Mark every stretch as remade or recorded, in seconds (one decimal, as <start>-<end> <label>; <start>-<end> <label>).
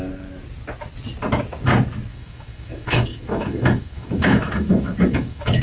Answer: 0.0-2.1 recorded; 2.1-5.6 remade